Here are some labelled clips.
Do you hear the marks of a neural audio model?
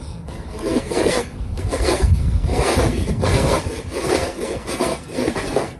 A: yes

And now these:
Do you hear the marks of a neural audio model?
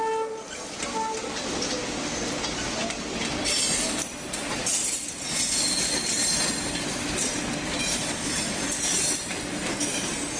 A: no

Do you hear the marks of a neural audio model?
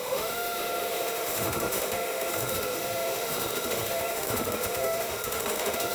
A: yes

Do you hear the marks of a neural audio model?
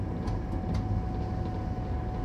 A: no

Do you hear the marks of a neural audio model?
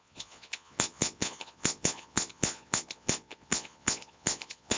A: yes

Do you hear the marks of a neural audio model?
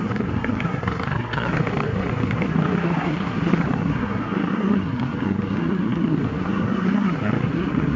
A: yes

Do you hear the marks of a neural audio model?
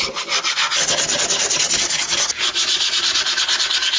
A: no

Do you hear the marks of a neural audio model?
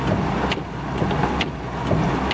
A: no